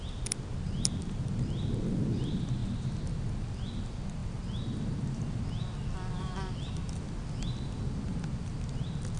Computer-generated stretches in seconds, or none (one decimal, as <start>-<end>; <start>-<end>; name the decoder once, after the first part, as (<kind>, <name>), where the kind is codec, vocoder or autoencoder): none